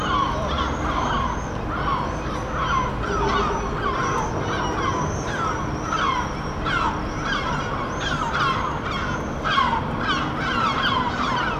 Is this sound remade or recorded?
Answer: recorded